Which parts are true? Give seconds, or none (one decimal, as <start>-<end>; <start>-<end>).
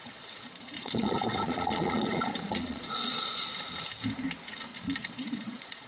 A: 3.5-4.7